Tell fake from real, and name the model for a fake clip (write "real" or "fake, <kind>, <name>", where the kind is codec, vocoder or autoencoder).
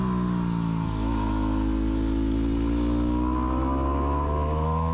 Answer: real